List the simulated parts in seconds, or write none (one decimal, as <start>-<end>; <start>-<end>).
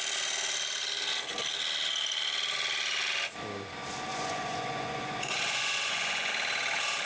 4.1-6.3